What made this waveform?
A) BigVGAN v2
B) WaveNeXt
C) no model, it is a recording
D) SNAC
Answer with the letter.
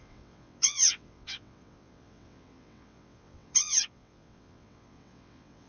B